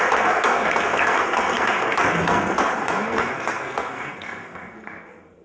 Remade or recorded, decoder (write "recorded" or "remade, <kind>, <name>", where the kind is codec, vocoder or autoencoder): remade, codec, SNAC